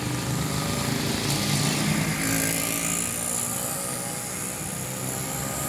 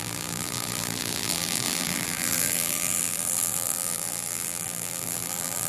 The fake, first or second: second